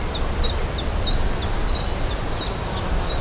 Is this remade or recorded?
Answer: recorded